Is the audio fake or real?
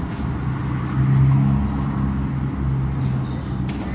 real